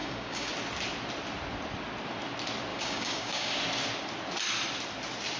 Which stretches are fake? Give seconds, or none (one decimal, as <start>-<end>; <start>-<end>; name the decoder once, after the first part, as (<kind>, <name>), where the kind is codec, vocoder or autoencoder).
0.0-0.5 (codec, DAC); 2.7-3.6